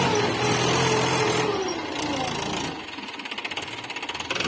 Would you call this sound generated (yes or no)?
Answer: no